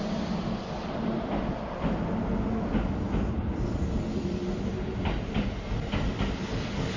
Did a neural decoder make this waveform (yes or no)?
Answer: no